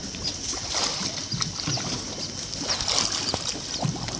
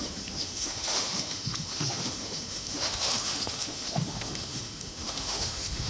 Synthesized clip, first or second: second